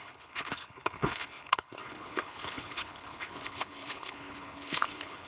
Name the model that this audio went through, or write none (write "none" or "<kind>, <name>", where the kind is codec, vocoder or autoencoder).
codec, HILCodec